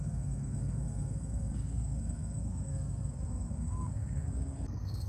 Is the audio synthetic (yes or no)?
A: yes